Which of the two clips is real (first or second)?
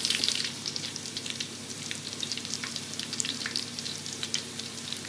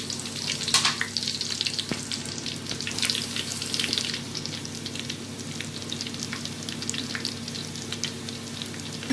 second